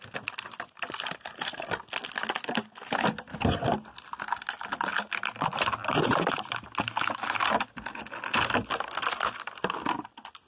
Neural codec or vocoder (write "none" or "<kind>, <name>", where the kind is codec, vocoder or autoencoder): none